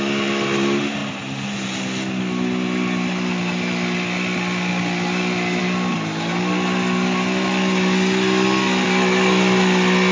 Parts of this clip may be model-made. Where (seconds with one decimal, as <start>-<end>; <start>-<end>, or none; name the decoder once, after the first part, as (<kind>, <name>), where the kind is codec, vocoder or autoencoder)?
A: none